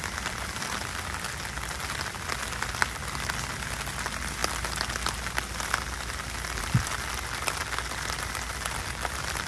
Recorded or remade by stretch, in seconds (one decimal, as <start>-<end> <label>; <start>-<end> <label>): 0.0-9.5 recorded